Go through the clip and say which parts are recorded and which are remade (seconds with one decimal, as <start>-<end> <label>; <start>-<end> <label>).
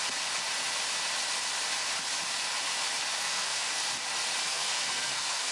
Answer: 0.0-3.2 recorded; 3.2-3.8 remade; 3.8-4.4 recorded; 4.4-5.5 remade